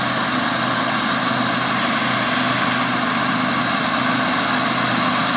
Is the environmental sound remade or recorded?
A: recorded